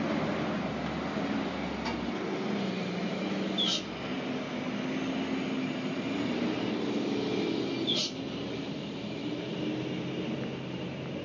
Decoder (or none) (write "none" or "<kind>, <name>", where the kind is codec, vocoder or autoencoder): none